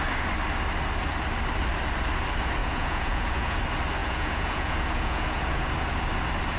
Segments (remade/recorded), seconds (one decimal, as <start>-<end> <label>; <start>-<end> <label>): 0.0-2.6 recorded; 2.6-3.6 remade; 3.6-4.0 recorded; 4.0-5.7 remade; 5.7-6.6 recorded